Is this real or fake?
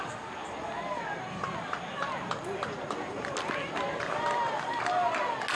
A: real